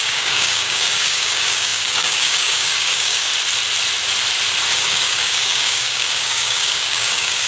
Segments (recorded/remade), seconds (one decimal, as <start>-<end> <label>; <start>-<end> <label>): 0.0-3.3 remade; 3.3-4.7 recorded; 4.7-7.5 remade

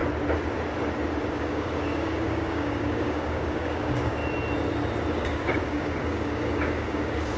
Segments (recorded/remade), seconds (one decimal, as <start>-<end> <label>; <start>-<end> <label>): 0.0-1.3 recorded; 1.3-4.2 remade; 4.2-5.1 recorded; 5.1-7.4 remade

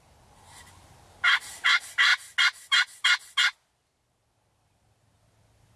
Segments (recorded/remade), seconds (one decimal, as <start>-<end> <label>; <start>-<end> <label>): 0.0-5.8 recorded

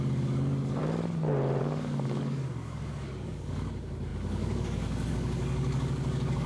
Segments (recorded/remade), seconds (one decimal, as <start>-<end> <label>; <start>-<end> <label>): 0.0-0.8 remade; 0.8-1.6 recorded; 1.6-6.5 remade

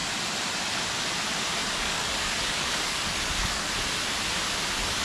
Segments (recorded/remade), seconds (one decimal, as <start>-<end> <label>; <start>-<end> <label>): 0.0-1.6 recorded; 1.6-3.7 remade; 3.7-5.0 recorded